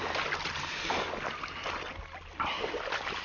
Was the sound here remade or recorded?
recorded